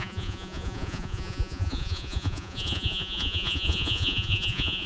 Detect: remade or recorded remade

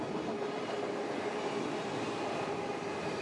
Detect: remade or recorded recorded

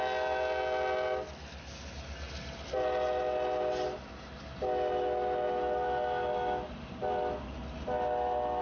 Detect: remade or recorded recorded